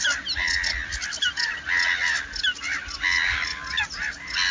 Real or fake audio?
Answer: real